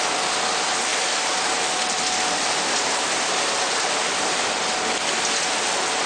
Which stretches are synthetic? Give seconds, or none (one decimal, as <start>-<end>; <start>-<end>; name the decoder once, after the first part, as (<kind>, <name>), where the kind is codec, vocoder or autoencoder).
0.9-4.6 (vocoder, BigVGAN v2)